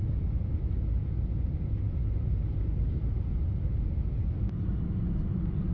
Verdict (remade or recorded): recorded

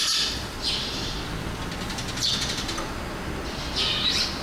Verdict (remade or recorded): recorded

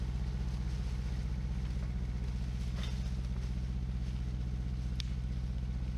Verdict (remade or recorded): recorded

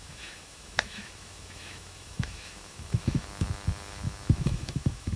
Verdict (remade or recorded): remade